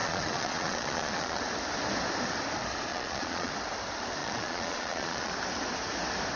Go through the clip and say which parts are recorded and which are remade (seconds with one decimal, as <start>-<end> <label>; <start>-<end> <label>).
0.0-1.4 remade; 1.4-2.9 recorded; 2.9-3.5 remade; 3.5-4.2 recorded; 4.2-5.3 remade; 5.3-6.4 recorded